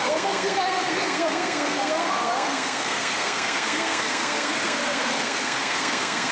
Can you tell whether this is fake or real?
fake